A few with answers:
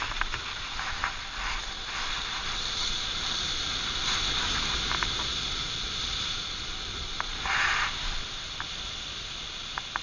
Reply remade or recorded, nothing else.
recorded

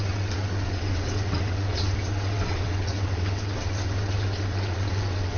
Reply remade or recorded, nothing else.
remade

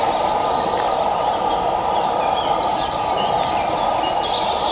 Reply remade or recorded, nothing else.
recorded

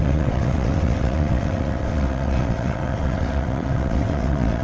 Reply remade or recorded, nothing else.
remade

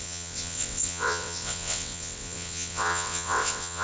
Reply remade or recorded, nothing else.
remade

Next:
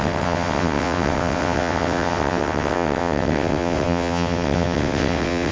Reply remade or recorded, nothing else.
remade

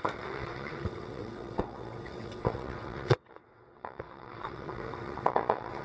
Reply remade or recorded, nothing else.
remade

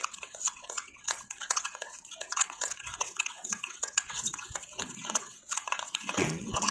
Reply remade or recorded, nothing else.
remade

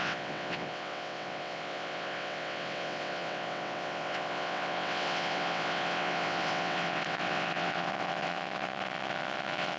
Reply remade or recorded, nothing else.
remade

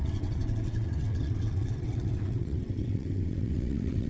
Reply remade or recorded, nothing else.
remade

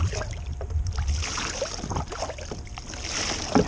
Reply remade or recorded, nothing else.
recorded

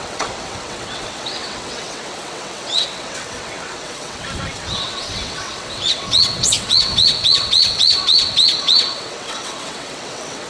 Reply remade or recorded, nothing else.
remade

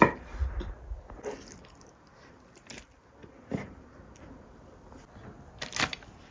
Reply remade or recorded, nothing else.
recorded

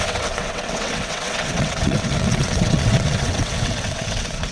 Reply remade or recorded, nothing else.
remade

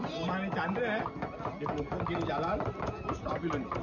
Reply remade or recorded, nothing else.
recorded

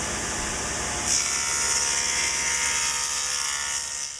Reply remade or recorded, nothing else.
recorded